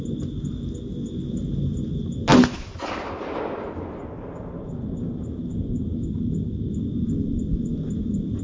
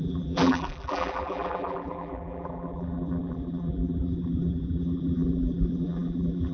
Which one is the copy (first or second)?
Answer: second